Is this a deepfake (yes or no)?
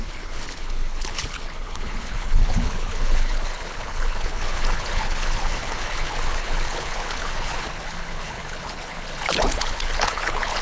yes